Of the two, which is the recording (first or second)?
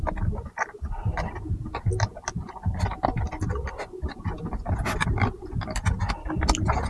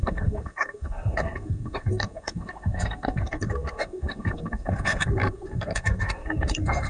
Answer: first